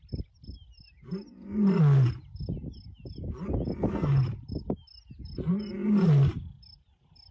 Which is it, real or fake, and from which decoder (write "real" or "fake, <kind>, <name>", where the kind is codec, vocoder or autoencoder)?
real